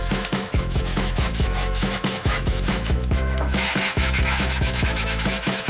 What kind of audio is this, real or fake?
fake